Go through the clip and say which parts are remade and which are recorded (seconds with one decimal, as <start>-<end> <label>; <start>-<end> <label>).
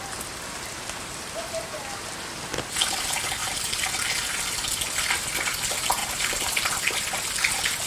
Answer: 0.0-3.4 recorded; 3.4-3.9 remade; 3.9-6.0 recorded; 6.0-6.7 remade; 6.7-7.9 recorded